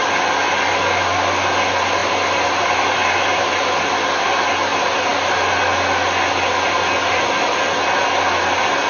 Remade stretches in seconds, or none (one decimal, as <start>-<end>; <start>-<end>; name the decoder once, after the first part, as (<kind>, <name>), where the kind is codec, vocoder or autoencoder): 2.0-3.9 (vocoder, BigVGAN v2); 5.1-5.6